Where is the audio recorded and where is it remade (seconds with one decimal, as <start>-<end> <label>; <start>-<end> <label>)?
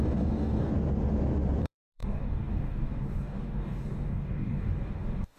0.0-0.7 remade; 0.7-1.6 recorded; 1.6-5.4 remade